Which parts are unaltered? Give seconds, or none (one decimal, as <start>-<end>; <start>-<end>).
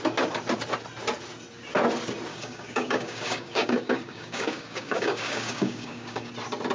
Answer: 0.0-2.3; 6.3-6.7